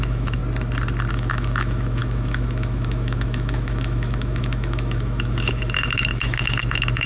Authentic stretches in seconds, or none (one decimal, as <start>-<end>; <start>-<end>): 0.4-1.1